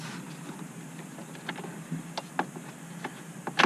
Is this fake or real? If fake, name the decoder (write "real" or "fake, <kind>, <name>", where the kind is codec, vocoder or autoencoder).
real